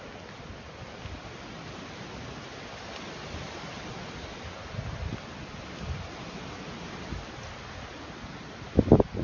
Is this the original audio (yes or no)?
yes